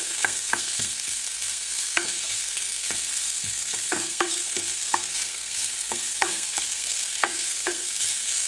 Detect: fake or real fake